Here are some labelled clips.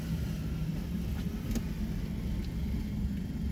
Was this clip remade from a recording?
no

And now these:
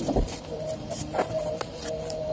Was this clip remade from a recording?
yes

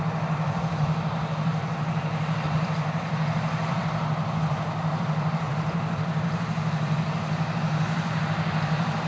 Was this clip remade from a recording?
yes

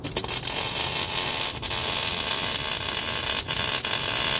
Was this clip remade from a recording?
no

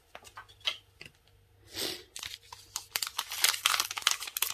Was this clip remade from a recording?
no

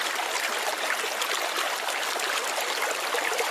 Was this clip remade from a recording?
yes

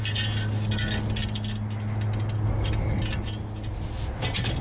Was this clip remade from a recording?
no